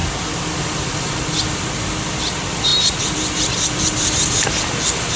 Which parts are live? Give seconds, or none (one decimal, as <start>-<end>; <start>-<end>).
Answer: 1.6-2.7; 4.1-5.2